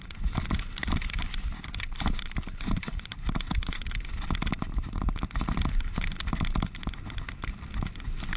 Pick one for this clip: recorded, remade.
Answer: recorded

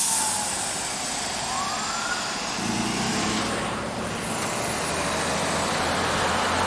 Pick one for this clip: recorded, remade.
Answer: recorded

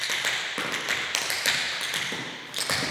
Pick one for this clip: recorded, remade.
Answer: recorded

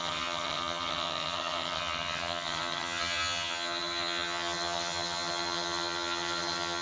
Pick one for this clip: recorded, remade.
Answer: remade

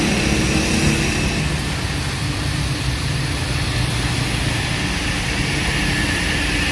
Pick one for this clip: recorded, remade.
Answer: recorded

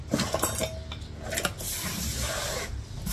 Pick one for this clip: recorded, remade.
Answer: recorded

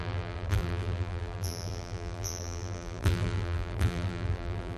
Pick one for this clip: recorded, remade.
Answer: remade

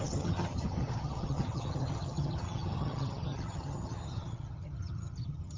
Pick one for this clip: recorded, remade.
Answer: remade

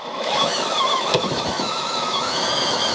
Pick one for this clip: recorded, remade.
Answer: remade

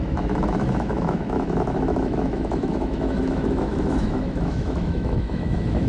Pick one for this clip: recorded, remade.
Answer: remade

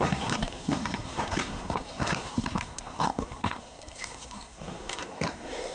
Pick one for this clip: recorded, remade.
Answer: remade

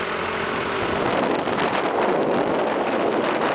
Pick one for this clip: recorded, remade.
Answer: recorded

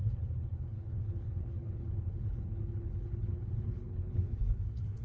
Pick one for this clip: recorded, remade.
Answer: remade